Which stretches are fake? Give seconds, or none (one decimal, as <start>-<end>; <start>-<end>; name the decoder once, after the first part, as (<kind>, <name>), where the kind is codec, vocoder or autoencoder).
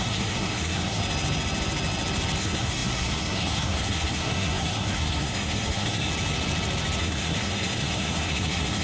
0.0-1.0 (codec, SNAC); 2.4-6.1; 7.0-8.8